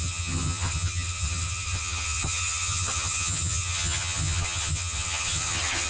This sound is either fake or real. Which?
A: fake